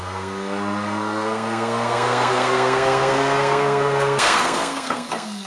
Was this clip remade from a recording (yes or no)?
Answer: yes